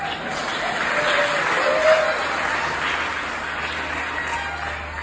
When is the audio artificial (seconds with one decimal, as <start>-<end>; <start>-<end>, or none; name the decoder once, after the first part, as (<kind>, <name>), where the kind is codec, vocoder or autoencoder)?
none